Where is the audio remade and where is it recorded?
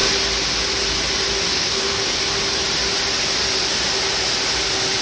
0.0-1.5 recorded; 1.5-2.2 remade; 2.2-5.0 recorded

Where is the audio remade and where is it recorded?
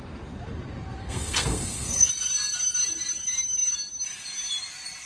0.0-1.0 recorded; 1.0-2.1 remade; 2.1-5.1 recorded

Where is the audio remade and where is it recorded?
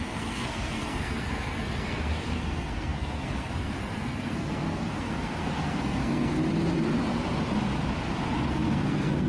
0.0-6.4 remade; 6.4-8.5 recorded; 8.5-9.3 remade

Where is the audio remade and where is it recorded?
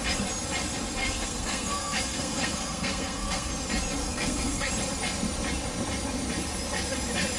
0.0-1.0 recorded; 1.0-3.5 remade; 3.5-4.0 recorded; 4.0-4.7 remade; 4.7-7.4 recorded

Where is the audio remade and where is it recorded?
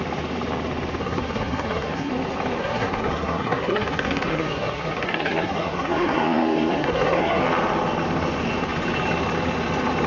0.0-1.0 recorded; 1.0-2.1 remade; 2.1-2.6 recorded; 2.6-7.4 remade; 7.4-10.1 recorded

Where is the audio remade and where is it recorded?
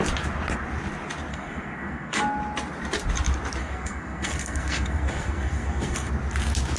0.0-1.3 recorded; 1.3-2.2 remade; 2.2-3.6 recorded; 3.6-6.1 remade; 6.1-6.8 recorded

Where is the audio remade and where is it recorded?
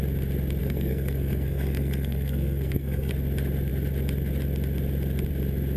0.0-0.6 recorded; 0.6-3.1 remade; 3.1-5.8 recorded